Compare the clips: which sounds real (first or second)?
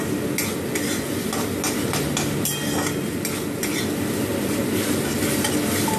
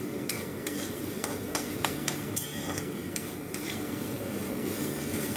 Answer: first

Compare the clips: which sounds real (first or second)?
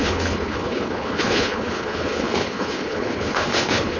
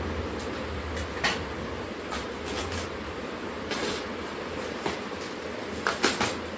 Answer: second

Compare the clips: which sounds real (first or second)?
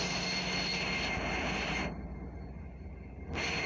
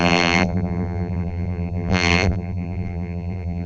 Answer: first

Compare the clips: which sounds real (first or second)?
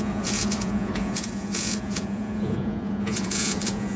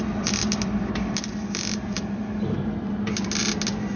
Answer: second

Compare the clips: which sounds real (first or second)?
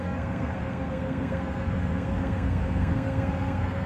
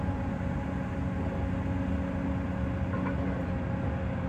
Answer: second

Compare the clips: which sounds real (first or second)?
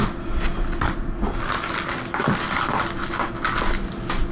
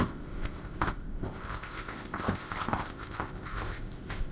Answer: first